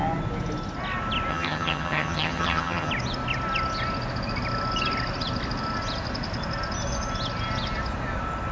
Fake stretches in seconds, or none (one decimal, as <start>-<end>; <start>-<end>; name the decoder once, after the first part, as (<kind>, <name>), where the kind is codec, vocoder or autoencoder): 1.3-2.9 (vocoder, HiFi-GAN)